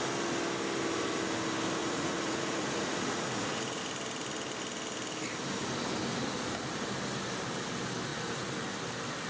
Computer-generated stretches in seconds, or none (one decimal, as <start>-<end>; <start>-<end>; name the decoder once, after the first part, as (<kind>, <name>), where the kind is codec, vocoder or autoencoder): 1.8-3.8 (vocoder, Vocos)